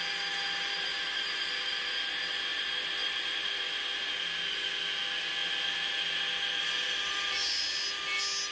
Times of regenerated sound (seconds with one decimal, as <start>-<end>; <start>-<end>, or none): none